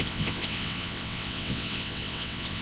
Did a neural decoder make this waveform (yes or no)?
yes